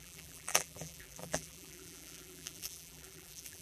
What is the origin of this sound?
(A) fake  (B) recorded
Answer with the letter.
A